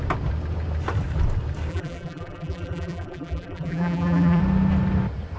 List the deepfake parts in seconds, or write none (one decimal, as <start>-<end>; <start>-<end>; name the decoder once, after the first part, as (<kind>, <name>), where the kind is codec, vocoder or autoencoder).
1.7-4.4 (vocoder, BigVGAN v2)